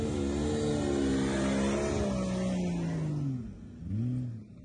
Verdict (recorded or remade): recorded